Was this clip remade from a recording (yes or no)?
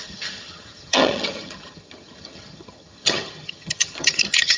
yes